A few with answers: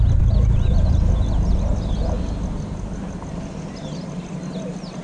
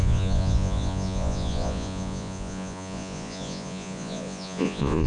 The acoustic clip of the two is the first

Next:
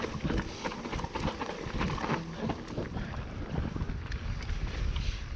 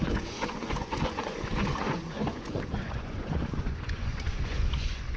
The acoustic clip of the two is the first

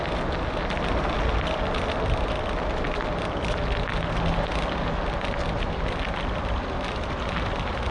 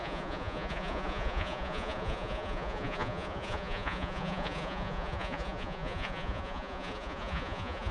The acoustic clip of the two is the first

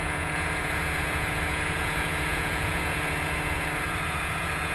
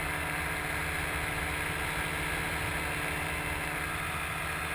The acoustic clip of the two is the second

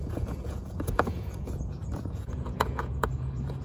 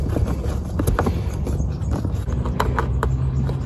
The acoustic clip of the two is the second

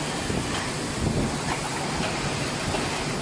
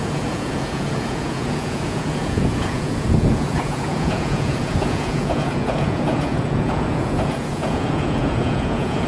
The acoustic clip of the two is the first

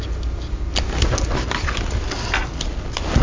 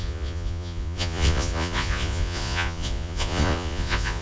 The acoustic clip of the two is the first